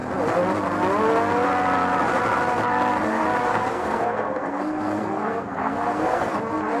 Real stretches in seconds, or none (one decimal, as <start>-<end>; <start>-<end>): 0.0-3.4; 6.3-6.8